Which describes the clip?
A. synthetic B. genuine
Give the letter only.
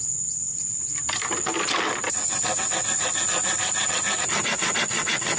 B